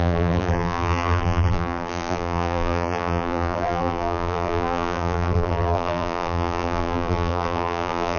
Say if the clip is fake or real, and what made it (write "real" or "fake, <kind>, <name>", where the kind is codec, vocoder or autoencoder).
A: fake, vocoder, BigVGAN v2